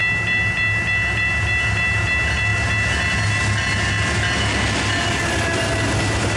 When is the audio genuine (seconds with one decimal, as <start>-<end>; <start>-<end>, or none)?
0.0-6.4